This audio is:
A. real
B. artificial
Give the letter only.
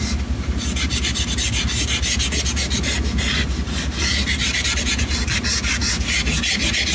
A